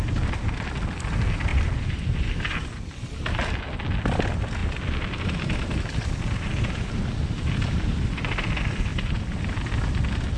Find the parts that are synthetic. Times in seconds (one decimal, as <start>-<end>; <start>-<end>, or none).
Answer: 1.5-3.2